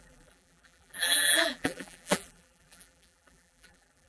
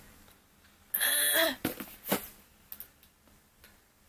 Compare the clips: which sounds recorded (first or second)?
second